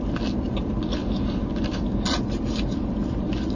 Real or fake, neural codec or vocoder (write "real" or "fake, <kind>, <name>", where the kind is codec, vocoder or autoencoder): real